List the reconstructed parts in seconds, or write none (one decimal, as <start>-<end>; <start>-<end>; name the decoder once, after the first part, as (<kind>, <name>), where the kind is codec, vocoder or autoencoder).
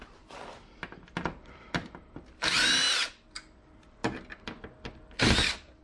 0.0-4.0 (vocoder, BigVGAN v2); 5.2-5.8